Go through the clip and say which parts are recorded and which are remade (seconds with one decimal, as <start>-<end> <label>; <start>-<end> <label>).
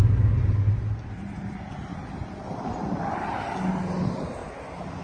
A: 0.0-4.4 recorded; 4.4-5.0 remade